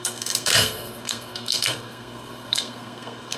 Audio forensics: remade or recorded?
remade